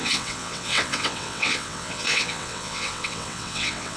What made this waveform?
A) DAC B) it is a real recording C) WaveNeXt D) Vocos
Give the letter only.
C